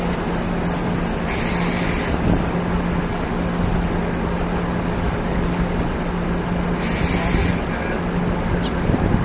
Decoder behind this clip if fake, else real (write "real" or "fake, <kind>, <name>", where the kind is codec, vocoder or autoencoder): real